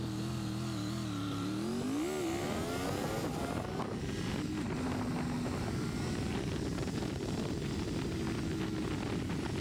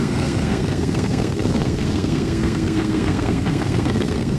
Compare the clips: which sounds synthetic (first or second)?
second